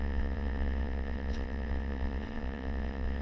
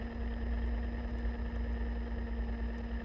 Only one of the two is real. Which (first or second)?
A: second